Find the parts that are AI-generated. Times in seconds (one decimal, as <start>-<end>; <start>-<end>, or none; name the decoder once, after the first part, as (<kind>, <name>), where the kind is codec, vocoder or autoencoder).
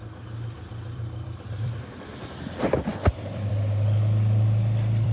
0.0-5.1 (vocoder, BigVGAN v2)